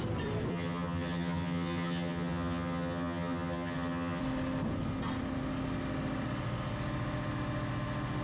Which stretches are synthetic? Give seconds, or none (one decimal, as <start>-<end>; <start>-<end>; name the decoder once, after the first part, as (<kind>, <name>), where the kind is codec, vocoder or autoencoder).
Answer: 0.5-4.2 (vocoder, HiFi-GAN)